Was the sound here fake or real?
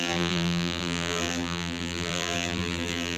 fake